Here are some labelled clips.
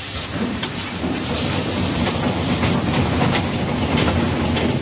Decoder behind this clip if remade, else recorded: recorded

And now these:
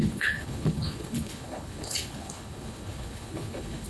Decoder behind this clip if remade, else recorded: remade, codec, HILCodec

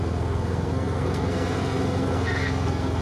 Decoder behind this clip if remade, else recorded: remade, codec, SNAC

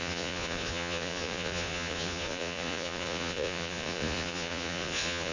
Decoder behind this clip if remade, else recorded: remade, vocoder, Vocos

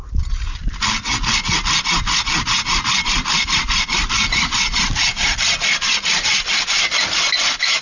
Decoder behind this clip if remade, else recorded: recorded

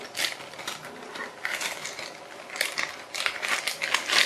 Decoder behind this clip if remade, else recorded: recorded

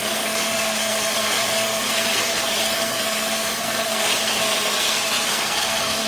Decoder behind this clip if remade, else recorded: remade, codec, SNAC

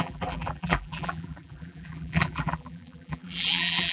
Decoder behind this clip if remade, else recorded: remade, vocoder, BigVGAN v2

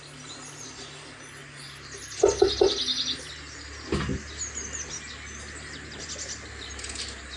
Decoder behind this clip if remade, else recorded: recorded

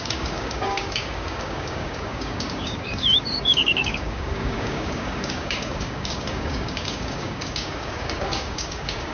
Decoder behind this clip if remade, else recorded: remade, codec, DAC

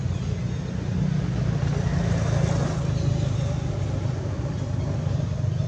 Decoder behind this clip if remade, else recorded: recorded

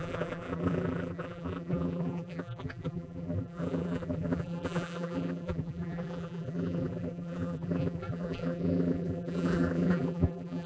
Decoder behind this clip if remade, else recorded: remade, vocoder, BigVGAN v2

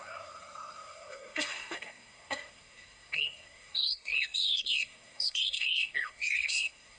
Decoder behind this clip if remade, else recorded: remade, codec, SNAC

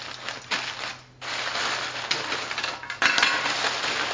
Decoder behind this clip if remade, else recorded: recorded